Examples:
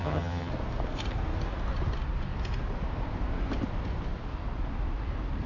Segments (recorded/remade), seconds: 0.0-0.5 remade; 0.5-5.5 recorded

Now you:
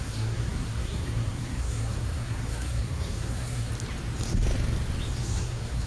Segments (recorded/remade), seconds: 0.0-3.7 remade; 3.7-5.2 recorded; 5.2-5.9 remade